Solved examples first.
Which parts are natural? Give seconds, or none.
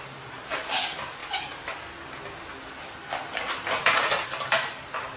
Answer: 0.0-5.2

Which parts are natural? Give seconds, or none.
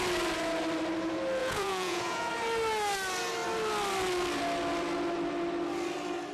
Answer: 0.0-1.4; 2.3-6.3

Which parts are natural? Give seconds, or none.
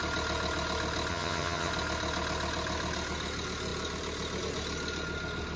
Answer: 0.0-1.1; 1.7-5.6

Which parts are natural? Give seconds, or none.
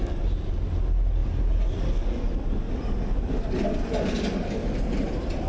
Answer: 0.0-4.6; 5.1-5.5